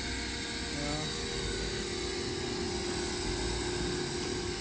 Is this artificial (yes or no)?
no